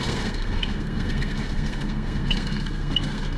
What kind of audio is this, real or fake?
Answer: fake